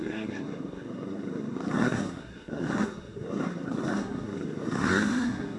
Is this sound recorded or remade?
remade